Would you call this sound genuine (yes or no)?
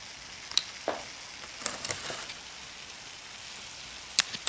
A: yes